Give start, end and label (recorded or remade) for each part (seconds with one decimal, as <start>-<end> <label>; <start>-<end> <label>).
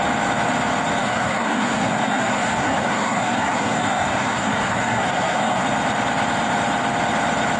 0.0-1.0 recorded; 1.0-5.6 remade; 5.6-7.6 recorded